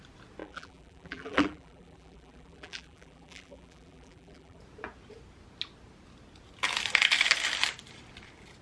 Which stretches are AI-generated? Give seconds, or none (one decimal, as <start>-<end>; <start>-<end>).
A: 0.4-4.6